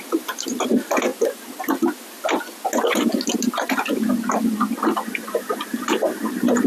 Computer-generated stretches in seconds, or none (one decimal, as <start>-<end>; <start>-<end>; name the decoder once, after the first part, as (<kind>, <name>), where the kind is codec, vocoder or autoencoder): 0.0-1.1 (vocoder, BigVGAN v2); 5.1-6.7